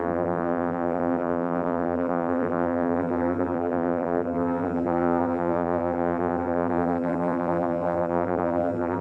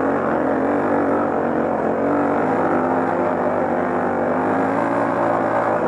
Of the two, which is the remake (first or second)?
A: first